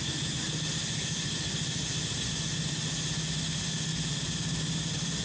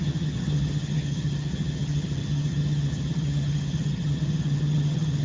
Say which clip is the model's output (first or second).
second